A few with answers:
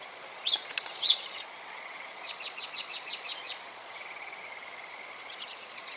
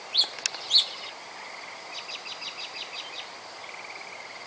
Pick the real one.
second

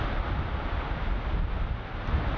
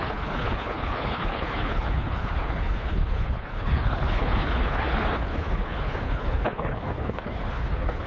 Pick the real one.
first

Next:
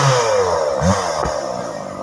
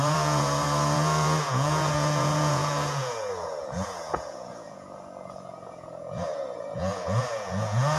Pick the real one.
first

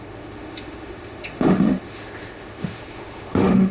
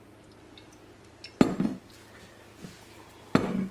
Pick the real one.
second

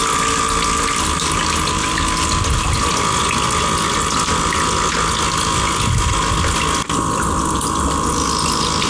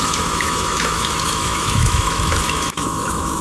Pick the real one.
first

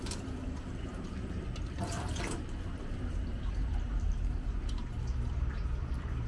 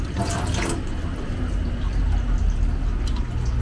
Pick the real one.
second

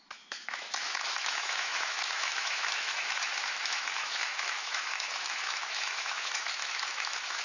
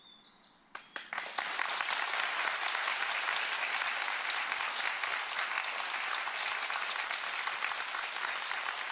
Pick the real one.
second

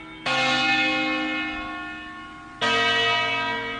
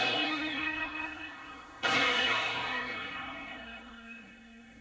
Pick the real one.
first